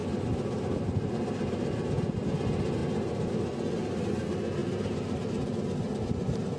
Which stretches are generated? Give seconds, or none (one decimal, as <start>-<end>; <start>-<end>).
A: none